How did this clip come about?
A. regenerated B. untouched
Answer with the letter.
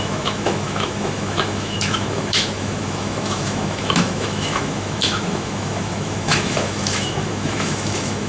A